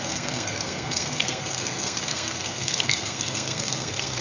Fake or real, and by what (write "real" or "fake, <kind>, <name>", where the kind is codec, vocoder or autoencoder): fake, codec, SNAC